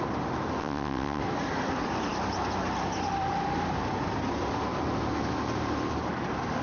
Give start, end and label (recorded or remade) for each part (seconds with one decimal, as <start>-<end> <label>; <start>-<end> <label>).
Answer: 0.0-0.6 recorded; 0.6-1.2 remade; 1.2-6.6 recorded